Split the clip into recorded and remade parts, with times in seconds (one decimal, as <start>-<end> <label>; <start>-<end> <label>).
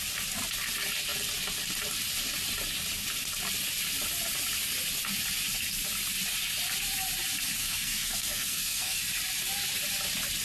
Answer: 0.0-7.6 recorded; 7.6-9.0 remade; 9.0-10.4 recorded